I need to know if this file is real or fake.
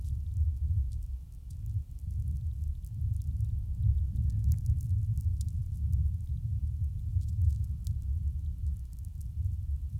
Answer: real